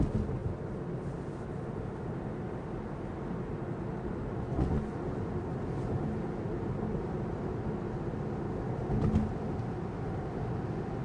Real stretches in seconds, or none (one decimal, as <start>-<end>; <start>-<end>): 0.0-4.3; 5.2-11.0